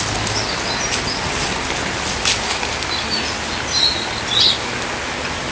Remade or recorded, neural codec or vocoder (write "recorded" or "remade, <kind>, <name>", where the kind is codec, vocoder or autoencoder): recorded